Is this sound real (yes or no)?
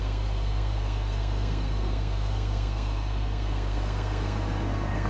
no